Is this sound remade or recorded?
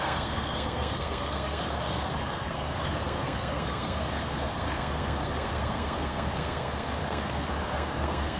remade